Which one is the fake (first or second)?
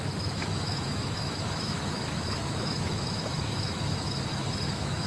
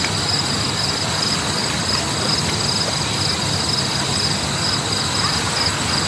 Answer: first